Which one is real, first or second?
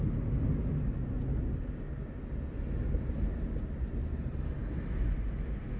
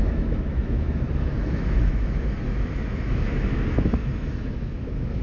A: first